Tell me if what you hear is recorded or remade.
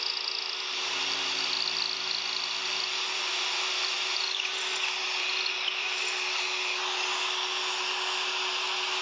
recorded